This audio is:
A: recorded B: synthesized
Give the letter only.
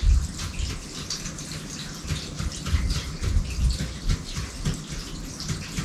A